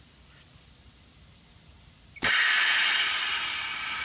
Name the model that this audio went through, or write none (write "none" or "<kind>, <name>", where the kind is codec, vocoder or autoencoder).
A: none